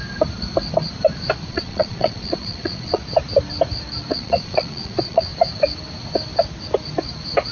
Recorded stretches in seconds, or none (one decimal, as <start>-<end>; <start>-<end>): 0.0-1.5; 3.0-4.1; 5.3-7.5